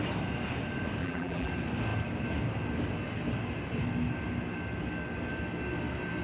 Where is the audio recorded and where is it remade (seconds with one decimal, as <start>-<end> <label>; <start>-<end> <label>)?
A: 0.0-1.0 recorded; 1.0-1.5 remade; 1.5-6.2 recorded